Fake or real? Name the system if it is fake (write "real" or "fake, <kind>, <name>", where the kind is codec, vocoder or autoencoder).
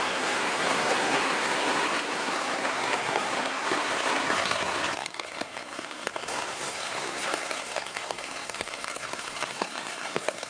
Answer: fake, codec, SNAC